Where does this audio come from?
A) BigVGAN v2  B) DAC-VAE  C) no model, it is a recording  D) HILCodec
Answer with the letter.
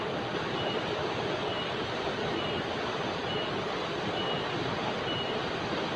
C